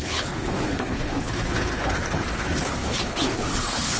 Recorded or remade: remade